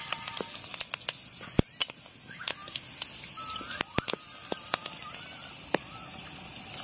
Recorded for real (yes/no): yes